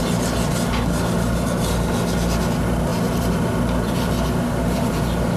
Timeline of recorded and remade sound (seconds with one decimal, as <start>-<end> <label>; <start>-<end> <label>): 0.0-5.4 recorded